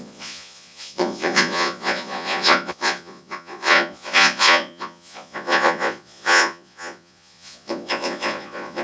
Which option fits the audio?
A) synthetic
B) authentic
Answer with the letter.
A